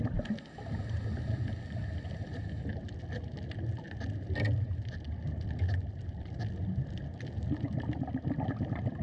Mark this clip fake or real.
real